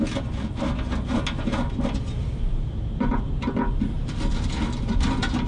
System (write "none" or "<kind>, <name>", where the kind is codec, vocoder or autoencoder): none